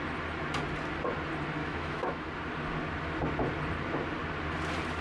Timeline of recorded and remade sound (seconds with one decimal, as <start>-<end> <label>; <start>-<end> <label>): 0.0-1.6 recorded; 1.6-2.3 remade; 2.3-5.0 recorded